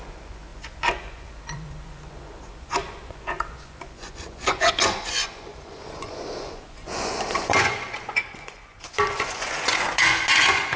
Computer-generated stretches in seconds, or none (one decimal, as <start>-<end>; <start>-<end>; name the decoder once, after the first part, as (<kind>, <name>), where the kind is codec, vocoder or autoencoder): 0.0-10.8 (vocoder, Vocos)